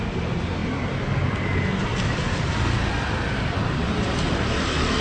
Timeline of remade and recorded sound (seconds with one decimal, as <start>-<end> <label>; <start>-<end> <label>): 0.0-1.9 recorded; 1.9-3.6 remade; 3.6-5.0 recorded

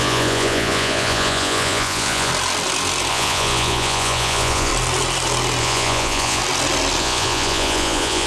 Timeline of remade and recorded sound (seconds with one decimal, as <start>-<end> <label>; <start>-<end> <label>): 0.0-2.3 remade; 2.3-3.1 recorded; 3.1-4.7 remade; 4.7-5.6 recorded; 5.6-6.4 remade; 6.4-7.0 recorded; 7.0-8.3 remade

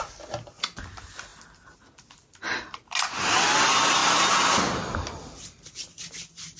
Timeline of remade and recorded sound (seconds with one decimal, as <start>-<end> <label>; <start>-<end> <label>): 0.0-6.6 recorded

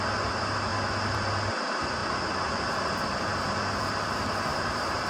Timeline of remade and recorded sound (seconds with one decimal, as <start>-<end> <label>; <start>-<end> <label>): 0.0-0.7 remade; 0.7-1.5 recorded; 1.5-5.1 remade